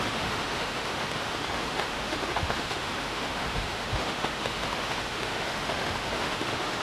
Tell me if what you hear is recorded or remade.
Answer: remade